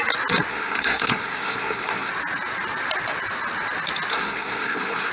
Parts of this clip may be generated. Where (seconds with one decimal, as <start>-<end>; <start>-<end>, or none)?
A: 0.5-2.1; 4.1-5.1

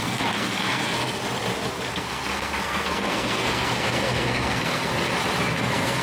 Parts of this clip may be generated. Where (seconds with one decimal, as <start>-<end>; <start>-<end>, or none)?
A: 0.0-1.2; 1.9-4.9; 5.6-6.0

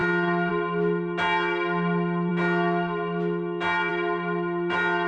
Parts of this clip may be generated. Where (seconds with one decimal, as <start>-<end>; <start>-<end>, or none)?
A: none

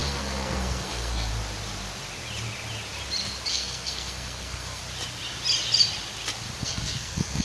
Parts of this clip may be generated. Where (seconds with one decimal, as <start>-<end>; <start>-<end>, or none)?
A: 0.0-1.3; 3.5-4.8; 6.6-7.4

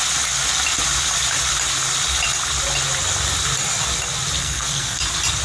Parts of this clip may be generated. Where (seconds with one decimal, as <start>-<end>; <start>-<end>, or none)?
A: 4.4-5.0

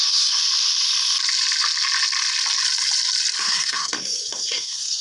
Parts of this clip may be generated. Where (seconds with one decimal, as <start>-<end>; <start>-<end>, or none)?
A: 0.0-0.4; 3.4-5.0